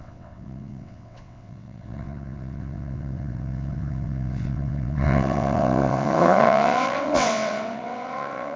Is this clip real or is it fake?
fake